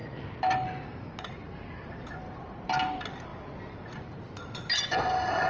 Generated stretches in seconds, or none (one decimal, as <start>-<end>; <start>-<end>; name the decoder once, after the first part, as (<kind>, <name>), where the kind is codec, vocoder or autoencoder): none